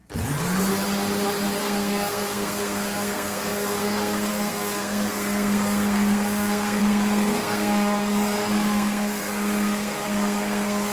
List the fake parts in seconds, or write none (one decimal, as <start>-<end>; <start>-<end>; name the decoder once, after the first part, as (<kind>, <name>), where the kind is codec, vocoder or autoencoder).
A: 1.6-10.9 (codec, SNAC)